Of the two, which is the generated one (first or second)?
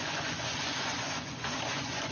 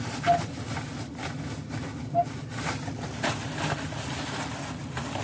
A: first